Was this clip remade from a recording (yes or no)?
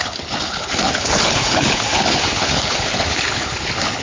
yes